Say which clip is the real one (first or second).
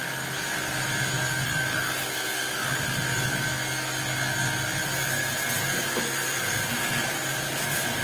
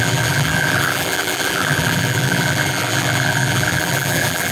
first